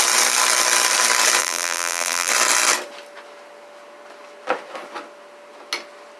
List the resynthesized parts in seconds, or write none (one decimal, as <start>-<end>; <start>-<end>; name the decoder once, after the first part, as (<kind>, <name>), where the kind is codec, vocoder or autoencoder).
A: 1.4-2.3 (vocoder, BigVGAN v2)